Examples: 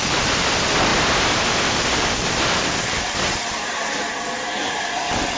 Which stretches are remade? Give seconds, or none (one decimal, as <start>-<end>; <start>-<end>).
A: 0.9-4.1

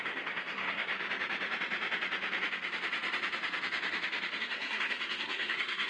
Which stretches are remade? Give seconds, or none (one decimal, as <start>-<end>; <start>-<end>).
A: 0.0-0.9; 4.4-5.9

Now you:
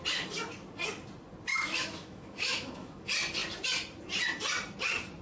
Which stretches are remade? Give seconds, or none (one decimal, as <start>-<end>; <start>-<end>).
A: 1.5-3.0

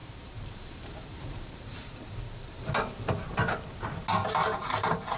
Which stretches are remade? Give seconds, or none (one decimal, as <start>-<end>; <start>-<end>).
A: 0.0-2.7; 4.4-5.2

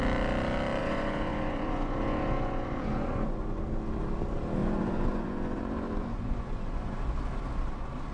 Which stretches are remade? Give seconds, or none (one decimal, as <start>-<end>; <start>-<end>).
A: 0.8-3.6; 4.6-7.0

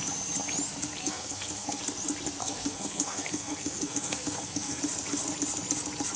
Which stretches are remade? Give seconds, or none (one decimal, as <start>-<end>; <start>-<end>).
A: 1.0-1.8; 2.4-4.8